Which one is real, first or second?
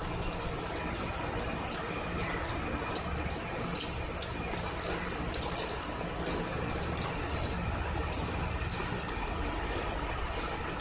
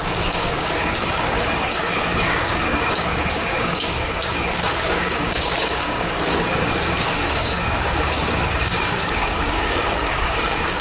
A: first